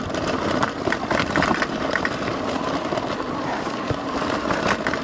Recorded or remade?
remade